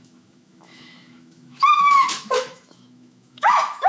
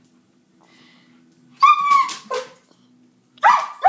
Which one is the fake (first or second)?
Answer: first